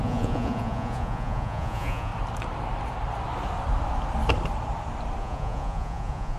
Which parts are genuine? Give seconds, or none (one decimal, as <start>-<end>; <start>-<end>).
2.1-5.2